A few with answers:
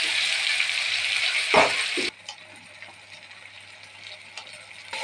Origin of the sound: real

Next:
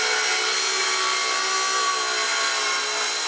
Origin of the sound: real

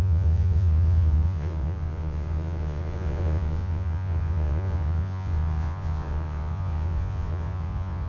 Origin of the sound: fake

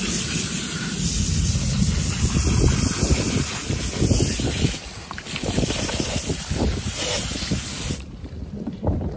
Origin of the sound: real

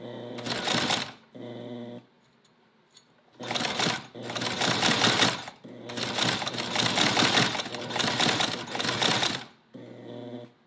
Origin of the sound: real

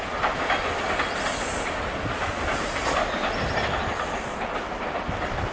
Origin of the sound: real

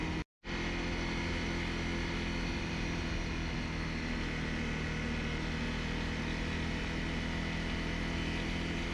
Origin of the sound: real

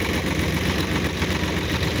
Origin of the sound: real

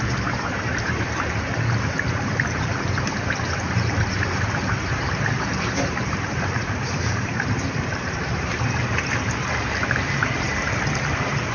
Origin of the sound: fake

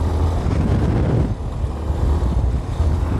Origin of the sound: real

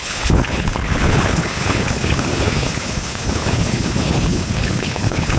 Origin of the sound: fake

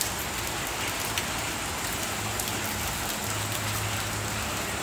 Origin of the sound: real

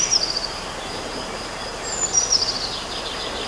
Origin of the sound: real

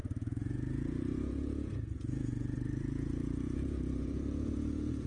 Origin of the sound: fake